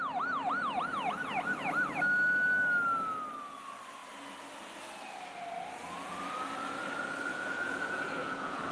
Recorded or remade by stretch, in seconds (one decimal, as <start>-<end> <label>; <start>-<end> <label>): 0.0-7.3 recorded; 7.3-8.7 remade